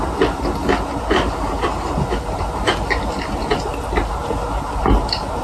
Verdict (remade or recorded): recorded